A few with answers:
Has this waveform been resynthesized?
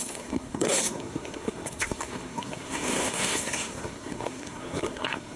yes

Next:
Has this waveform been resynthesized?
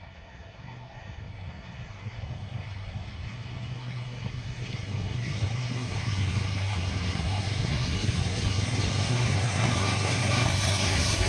yes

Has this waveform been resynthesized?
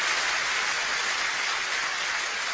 no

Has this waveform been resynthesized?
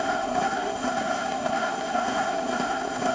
yes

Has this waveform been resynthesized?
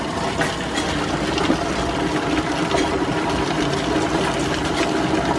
no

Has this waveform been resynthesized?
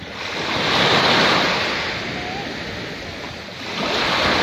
no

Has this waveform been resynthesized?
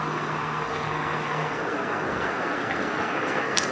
yes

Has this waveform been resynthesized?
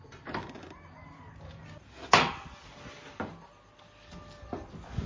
no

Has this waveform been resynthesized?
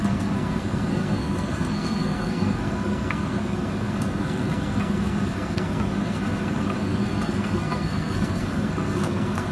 yes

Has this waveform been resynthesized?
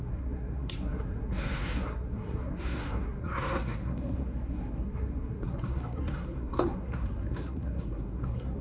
yes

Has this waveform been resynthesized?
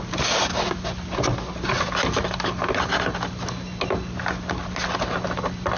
no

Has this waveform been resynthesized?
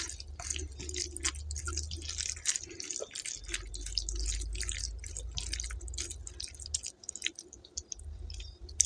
no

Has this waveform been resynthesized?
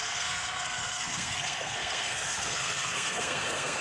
yes